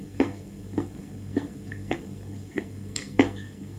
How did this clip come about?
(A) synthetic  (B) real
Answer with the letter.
A